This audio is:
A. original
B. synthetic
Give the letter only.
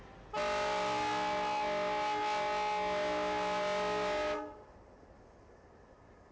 A